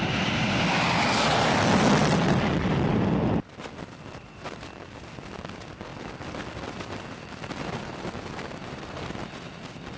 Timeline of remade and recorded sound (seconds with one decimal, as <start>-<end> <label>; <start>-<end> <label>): 0.0-10.0 recorded